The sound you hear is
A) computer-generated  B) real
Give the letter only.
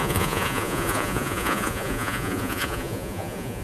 A